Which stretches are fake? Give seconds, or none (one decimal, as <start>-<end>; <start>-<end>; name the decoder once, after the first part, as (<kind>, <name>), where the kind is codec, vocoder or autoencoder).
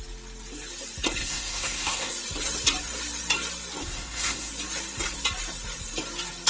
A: 1.2-2.1 (codec, SNAC); 3.8-4.5